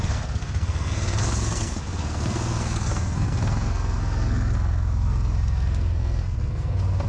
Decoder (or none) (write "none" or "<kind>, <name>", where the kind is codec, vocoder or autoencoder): codec, SNAC